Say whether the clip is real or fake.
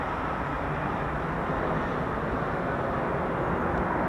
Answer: real